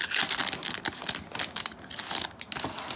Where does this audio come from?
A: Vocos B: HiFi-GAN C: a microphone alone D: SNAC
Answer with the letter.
C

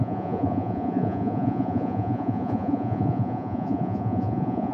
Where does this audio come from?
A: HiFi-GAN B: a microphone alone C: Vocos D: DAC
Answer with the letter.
C